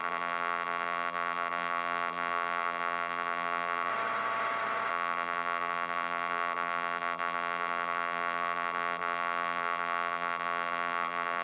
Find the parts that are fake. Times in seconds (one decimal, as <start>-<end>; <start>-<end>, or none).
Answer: 0.0-3.9; 4.9-11.4

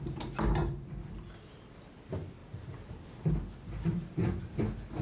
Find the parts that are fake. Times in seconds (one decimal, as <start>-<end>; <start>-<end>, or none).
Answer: 0.6-1.5; 2.4-3.3; 3.9-4.6

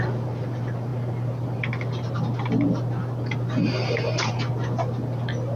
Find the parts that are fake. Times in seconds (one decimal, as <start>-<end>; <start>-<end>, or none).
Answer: none